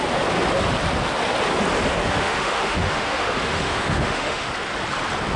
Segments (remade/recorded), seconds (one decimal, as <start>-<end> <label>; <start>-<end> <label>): 0.0-2.0 recorded; 2.0-4.5 remade; 4.5-5.4 recorded